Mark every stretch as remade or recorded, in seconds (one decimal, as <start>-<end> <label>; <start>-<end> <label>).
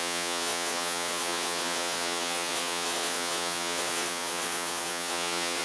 0.0-5.6 remade